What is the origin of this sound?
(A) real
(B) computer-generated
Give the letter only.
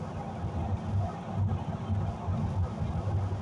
A